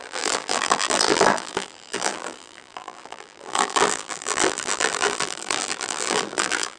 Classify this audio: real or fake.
fake